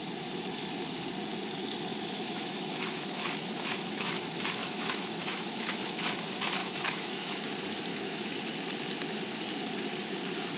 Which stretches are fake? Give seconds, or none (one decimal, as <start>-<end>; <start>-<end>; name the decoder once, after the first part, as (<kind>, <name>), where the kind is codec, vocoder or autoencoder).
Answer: 1.9-4.1 (autoencoder, DAC-VAE); 4.6-6.0; 6.6-7.5; 7.9-8.4